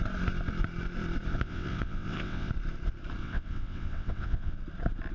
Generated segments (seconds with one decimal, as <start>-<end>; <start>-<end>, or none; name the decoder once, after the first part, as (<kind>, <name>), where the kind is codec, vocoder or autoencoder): 1.3-2.5 (vocoder, WaveNeXt); 3.2-4.6